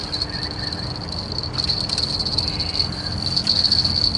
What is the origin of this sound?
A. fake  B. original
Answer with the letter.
B